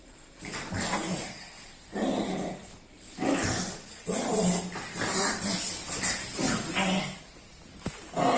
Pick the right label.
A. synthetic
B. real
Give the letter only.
B